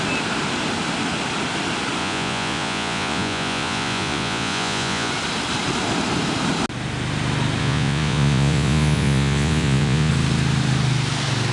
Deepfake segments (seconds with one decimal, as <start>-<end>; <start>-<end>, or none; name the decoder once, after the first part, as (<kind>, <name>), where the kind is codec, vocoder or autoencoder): 2.0-5.1 (vocoder, Vocos); 7.6-10.1